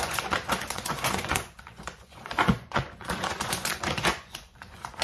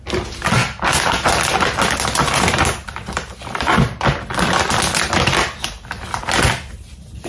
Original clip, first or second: second